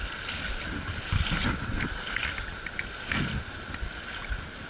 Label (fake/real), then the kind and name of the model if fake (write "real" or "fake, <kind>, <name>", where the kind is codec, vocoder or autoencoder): real